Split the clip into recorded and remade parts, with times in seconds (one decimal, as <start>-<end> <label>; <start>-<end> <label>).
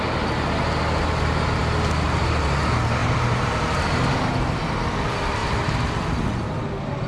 0.0-3.0 recorded; 3.0-4.6 remade; 4.6-5.4 recorded; 5.4-6.0 remade; 6.0-7.1 recorded